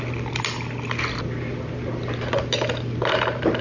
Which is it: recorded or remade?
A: recorded